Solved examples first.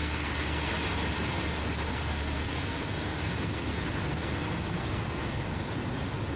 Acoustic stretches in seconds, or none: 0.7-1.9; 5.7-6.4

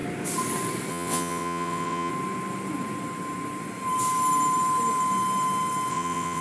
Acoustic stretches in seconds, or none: 0.0-0.9; 2.1-5.9